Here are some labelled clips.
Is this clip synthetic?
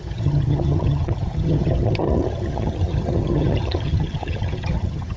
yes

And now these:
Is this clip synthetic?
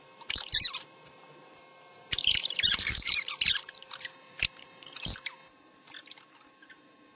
yes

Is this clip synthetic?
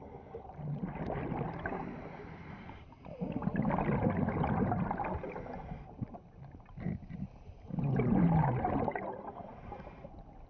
no